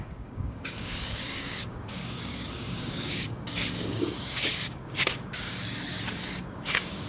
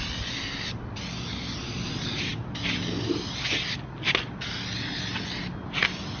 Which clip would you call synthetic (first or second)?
first